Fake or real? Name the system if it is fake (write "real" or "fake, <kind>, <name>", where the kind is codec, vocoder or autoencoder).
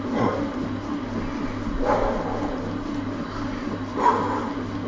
real